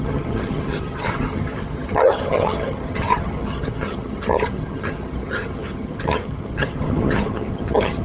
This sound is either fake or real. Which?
fake